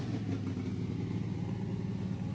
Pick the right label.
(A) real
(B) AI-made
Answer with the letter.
A